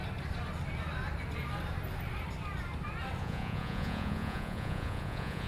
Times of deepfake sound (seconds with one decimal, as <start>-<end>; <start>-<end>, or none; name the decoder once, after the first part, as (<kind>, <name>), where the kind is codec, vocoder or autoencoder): 3.2-5.5 (vocoder, Vocos)